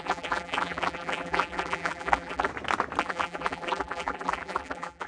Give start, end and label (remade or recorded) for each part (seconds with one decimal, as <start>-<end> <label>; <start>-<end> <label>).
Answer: 0.0-2.5 remade; 2.5-3.0 recorded; 3.0-5.1 remade